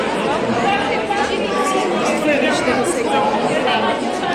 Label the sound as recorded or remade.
recorded